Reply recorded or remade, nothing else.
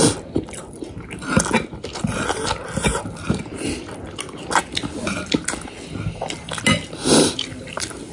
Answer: recorded